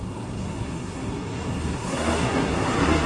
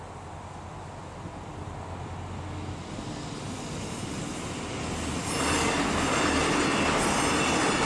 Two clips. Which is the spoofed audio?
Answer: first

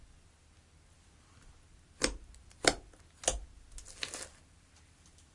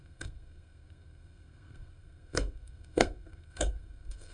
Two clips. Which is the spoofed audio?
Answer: second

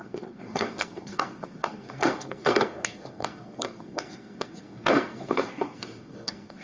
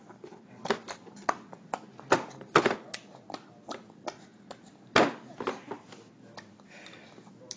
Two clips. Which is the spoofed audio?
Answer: first